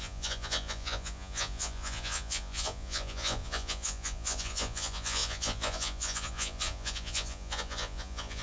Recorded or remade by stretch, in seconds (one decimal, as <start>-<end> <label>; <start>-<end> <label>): 0.0-8.4 remade

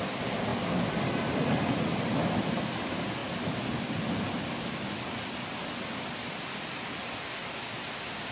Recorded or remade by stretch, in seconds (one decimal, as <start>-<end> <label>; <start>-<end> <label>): 0.0-8.3 recorded

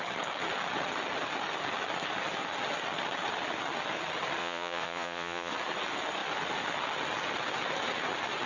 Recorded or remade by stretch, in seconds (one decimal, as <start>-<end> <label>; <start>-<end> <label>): 0.0-4.4 recorded; 4.4-5.5 remade; 5.5-8.5 recorded

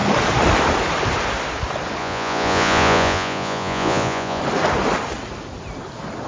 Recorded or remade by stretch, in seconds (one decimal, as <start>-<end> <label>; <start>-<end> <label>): 0.0-2.0 recorded; 2.0-4.4 remade; 4.4-6.3 recorded

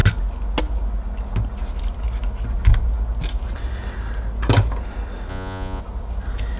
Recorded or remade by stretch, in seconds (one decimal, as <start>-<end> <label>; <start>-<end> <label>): 0.0-5.3 recorded; 5.3-5.8 remade; 5.8-6.6 recorded

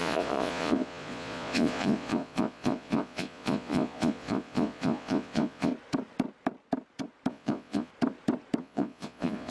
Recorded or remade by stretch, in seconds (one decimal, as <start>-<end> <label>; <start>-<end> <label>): 0.0-5.7 remade; 5.7-7.3 recorded; 7.3-7.9 remade; 7.9-8.6 recorded; 8.6-9.5 remade

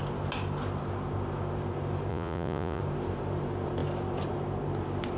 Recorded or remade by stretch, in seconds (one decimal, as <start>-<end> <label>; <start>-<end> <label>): 0.0-2.1 recorded; 2.1-2.8 remade; 2.8-5.2 recorded

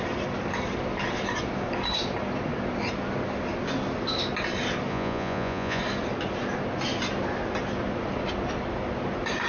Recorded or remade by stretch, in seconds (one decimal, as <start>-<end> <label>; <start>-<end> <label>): 0.0-4.9 recorded; 4.9-5.8 remade; 5.8-9.5 recorded